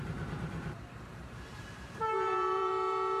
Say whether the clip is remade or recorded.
remade